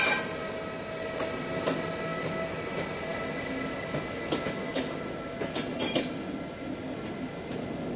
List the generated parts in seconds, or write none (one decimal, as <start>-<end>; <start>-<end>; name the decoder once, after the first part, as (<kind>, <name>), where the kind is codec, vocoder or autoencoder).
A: none